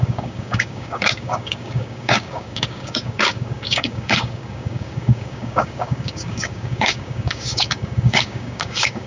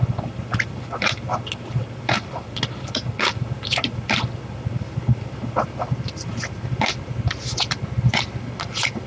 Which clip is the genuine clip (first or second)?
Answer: second